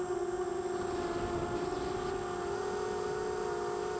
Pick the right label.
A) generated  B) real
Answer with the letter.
B